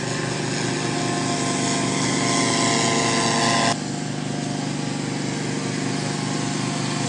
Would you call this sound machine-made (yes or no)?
no